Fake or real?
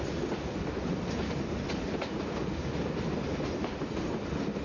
real